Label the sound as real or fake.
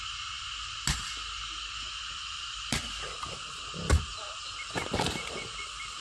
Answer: real